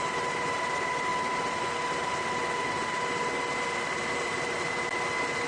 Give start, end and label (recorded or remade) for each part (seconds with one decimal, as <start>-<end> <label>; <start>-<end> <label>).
0.0-5.5 recorded

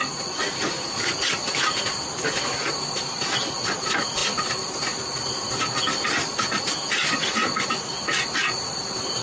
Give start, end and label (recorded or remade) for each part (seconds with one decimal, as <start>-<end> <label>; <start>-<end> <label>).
0.0-9.2 recorded

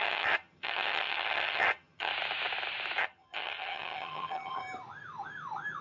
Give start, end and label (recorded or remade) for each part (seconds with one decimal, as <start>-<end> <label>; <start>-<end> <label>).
0.0-2.1 remade; 2.1-3.0 recorded; 3.0-4.6 remade; 4.6-5.8 recorded

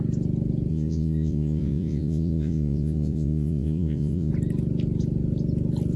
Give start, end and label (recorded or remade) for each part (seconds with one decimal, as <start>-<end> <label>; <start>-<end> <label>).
0.0-0.7 recorded; 0.7-4.3 remade; 4.3-6.0 recorded

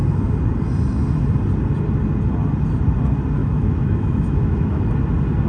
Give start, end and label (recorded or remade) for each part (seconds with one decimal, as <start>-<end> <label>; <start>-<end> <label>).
0.0-3.4 recorded; 3.4-4.8 remade; 4.8-5.5 recorded

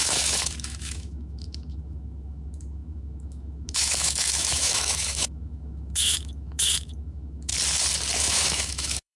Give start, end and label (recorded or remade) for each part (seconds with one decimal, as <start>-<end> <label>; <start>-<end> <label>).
0.0-7.5 remade; 7.5-8.2 recorded; 8.2-9.2 remade

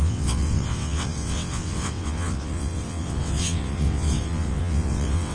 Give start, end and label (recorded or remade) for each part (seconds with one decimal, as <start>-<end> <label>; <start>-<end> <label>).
0.0-5.3 remade

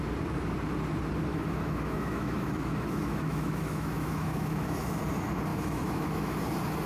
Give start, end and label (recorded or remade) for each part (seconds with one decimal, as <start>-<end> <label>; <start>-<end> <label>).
0.0-1.3 recorded; 1.3-5.0 remade; 5.0-5.5 recorded; 5.5-6.4 remade; 6.4-6.9 recorded